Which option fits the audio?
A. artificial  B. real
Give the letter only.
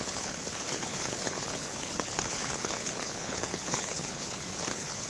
A